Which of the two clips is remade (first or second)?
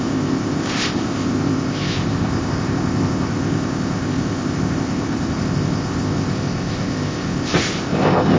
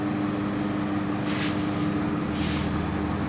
first